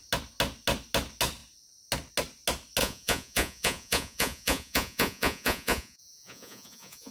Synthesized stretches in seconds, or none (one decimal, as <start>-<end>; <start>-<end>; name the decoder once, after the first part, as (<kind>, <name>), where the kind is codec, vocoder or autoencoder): 2.8-7.1 (vocoder, Vocos)